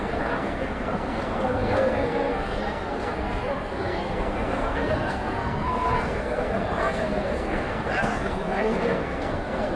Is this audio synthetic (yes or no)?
yes